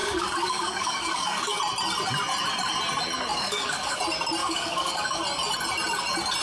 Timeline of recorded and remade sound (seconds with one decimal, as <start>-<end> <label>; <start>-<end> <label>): 0.0-1.6 remade; 1.6-3.3 recorded; 3.3-4.0 remade; 4.0-4.4 recorded; 4.4-5.2 remade; 5.2-6.4 recorded